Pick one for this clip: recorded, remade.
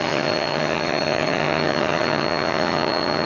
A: remade